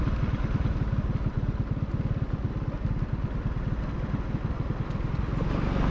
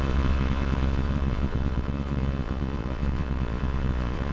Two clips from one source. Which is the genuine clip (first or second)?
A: first